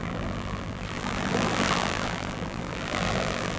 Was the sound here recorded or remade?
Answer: remade